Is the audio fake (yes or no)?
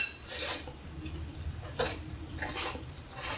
yes